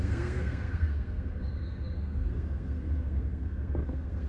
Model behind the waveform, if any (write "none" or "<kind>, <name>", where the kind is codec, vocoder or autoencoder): codec, SNAC